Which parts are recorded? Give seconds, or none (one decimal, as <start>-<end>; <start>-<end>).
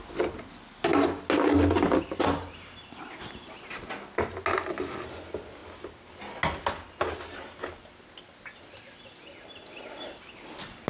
0.0-10.9